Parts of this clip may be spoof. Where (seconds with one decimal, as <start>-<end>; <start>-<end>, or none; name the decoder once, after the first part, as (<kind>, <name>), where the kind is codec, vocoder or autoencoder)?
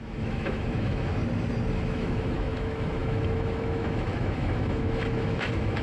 0.0-1.2 (autoencoder, DAC-VAE); 1.7-5.8